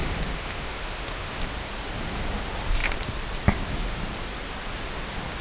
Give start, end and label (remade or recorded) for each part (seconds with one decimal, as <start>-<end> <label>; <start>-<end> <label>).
0.0-1.4 remade; 1.4-5.4 recorded

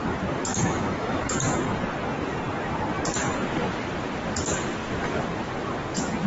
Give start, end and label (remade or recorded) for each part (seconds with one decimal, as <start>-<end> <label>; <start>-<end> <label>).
0.0-0.5 recorded; 0.5-1.2 remade; 1.2-6.3 recorded

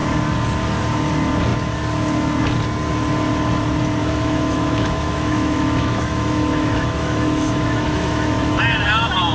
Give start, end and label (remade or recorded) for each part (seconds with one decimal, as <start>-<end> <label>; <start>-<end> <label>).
0.0-4.0 recorded; 4.0-8.6 remade; 8.6-9.3 recorded

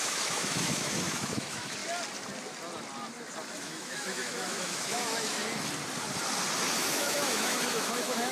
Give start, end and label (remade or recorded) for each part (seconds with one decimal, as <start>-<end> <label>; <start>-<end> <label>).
0.0-1.8 remade; 1.8-3.6 recorded; 3.6-5.4 remade; 5.4-6.9 recorded; 6.9-8.3 remade

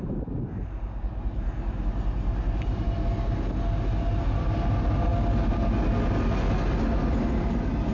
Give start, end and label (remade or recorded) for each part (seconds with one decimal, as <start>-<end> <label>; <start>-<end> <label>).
0.0-7.9 recorded

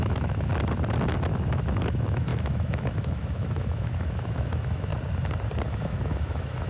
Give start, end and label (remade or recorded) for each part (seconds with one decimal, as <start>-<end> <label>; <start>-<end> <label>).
0.0-0.5 remade; 0.5-1.8 recorded; 1.8-4.9 remade; 4.9-5.7 recorded; 5.7-6.7 remade

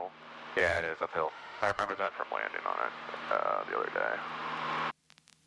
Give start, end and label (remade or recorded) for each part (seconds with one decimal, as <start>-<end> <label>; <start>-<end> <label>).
0.0-0.6 recorded; 0.6-2.1 remade; 2.1-5.5 recorded

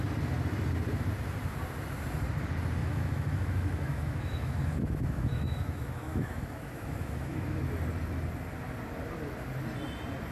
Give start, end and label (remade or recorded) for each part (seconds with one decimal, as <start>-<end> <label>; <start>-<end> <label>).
0.0-2.8 recorded; 2.8-7.7 remade; 7.7-10.3 recorded